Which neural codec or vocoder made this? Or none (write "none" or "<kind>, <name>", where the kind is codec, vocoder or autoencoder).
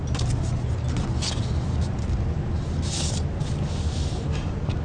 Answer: none